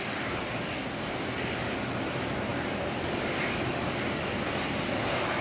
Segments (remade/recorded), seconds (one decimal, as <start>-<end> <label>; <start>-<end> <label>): 0.0-5.4 recorded